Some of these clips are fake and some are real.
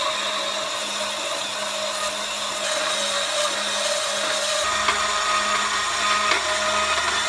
real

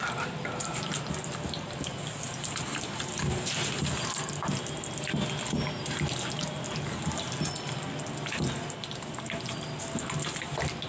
real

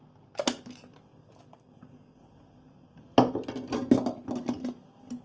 real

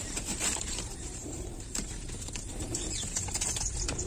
fake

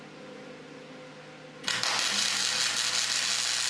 real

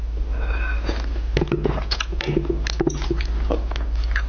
real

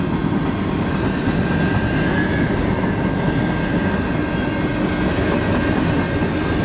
real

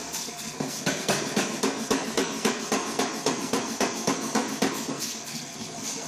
fake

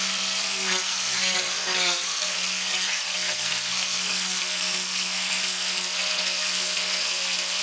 fake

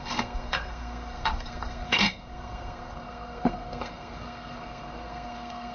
fake